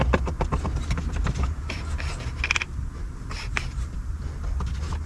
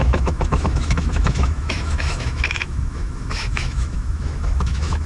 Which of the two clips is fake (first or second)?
second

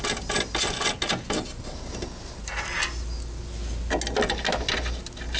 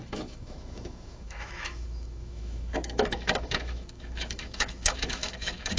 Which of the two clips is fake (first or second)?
second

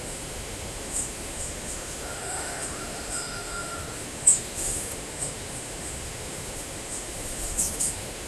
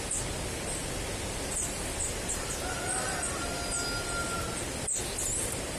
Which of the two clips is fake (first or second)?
first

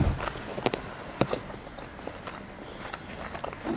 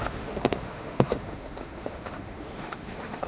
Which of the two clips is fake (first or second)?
second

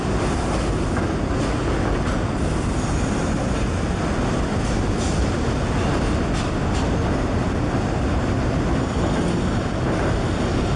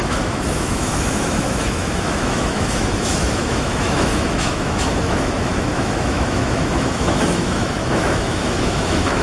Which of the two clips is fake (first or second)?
second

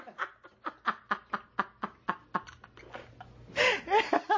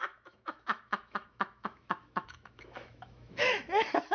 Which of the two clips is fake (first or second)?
second